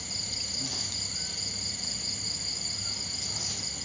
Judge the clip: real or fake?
real